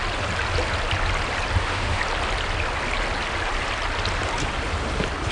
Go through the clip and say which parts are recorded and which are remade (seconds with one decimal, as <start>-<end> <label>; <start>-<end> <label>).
0.0-1.6 recorded; 1.6-2.0 remade; 2.0-5.3 recorded